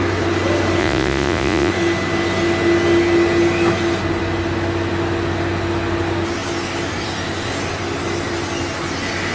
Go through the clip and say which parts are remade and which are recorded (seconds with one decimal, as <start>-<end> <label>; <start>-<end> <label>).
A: 0.0-0.8 recorded; 0.8-1.7 remade; 1.7-9.3 recorded